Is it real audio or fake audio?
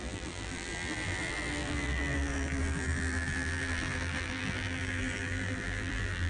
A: fake